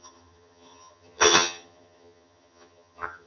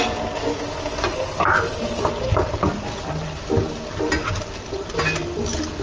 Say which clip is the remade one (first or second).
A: first